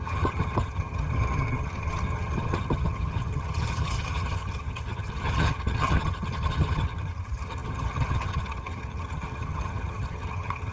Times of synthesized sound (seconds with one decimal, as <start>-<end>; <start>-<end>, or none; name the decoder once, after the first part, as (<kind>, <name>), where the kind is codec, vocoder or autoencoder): 0.0-10.7 (vocoder, HiFi-GAN)